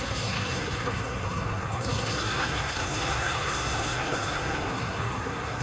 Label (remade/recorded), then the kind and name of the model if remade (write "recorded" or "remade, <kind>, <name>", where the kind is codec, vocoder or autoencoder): remade, codec, SNAC